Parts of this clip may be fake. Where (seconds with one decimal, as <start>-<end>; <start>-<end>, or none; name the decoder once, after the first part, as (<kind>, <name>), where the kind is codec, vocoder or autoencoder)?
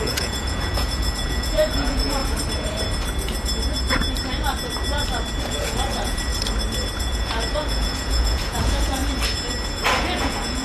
0.0-2.2 (vocoder, Vocos); 5.4-6.3; 7.0-9.0; 10.0-10.6